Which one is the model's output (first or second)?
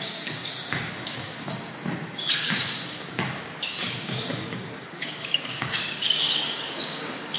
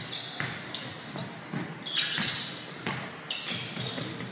first